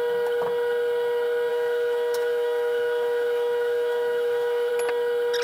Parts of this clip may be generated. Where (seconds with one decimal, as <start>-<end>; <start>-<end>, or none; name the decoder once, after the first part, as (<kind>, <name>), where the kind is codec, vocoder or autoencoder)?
1.5-4.7 (autoencoder, DAC-VAE)